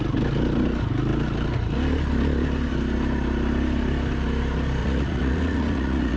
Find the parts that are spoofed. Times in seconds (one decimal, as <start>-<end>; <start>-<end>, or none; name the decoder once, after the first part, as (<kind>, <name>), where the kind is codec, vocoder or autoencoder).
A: 4.8-6.2 (vocoder, Vocos)